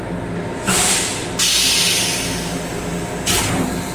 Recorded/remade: recorded